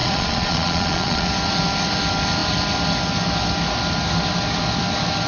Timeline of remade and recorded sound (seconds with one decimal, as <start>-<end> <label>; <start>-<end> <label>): 0.0-1.3 remade; 1.3-5.3 recorded